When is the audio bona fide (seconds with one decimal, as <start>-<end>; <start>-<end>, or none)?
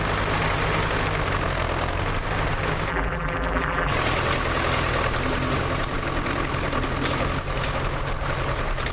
0.0-2.9; 3.9-8.9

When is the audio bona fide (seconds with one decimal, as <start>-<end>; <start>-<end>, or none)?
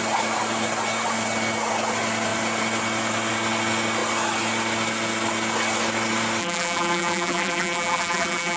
0.0-6.4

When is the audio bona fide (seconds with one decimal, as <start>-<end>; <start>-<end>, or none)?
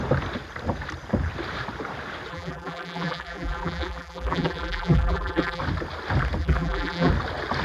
0.0-2.3; 5.6-6.4; 7.1-7.6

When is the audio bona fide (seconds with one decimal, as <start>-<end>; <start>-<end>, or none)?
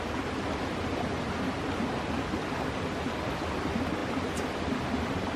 0.0-4.0; 5.0-5.4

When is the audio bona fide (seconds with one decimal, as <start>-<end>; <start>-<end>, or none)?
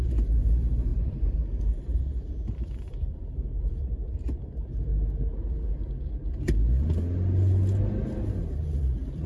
4.9-8.4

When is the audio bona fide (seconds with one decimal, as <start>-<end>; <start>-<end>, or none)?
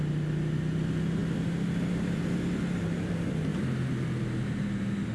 0.0-1.2; 2.2-5.1